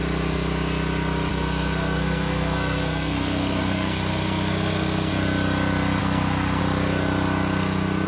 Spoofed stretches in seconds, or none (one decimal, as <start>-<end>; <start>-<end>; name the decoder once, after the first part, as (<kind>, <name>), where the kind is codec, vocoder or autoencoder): 1.3-5.1 (codec, SNAC); 6.0-6.6

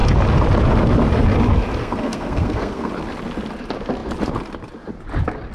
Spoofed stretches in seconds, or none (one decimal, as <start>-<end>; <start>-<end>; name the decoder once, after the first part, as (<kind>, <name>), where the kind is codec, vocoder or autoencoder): 1.8-2.9 (codec, SNAC)

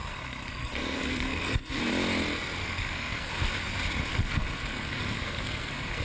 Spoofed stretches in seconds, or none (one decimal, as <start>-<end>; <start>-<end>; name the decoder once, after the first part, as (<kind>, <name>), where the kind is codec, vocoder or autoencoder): 0.0-1.8 (codec, SNAC); 2.6-3.3; 4.1-6.0

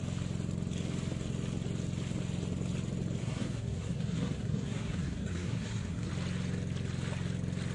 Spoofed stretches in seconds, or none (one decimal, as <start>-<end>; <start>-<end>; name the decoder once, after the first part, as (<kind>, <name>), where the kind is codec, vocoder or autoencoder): 3.2-6.1 (codec, SNAC)

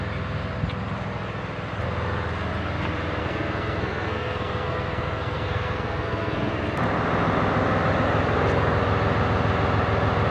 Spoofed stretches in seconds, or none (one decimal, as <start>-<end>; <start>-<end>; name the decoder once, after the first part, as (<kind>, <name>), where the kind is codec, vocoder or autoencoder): 3.2-6.5 (codec, SNAC)